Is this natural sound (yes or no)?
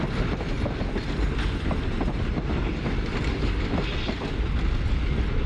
yes